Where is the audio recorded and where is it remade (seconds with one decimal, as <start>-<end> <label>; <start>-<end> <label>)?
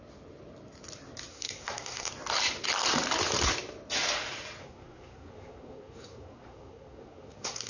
0.0-1.3 recorded; 1.3-2.1 remade; 2.1-4.6 recorded; 4.6-7.7 remade